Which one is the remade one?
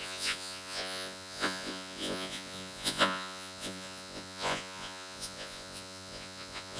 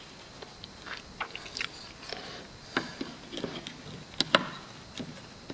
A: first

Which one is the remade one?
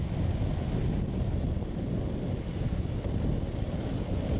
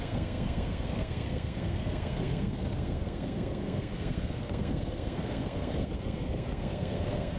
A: second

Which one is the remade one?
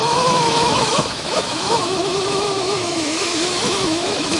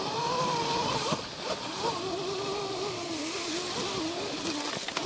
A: first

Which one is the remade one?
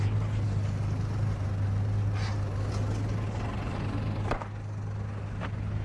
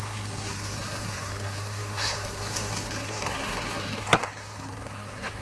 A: second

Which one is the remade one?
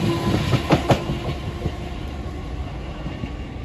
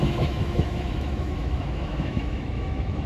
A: second